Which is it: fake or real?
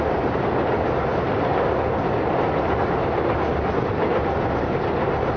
real